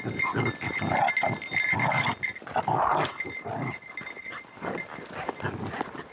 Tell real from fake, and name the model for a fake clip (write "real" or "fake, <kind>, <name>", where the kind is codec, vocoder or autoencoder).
real